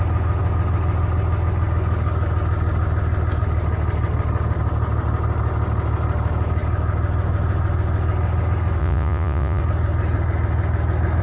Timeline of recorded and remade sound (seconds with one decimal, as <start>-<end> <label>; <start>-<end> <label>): 0.0-8.8 recorded; 8.8-9.6 remade; 9.6-11.2 recorded